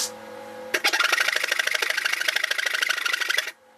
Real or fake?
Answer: real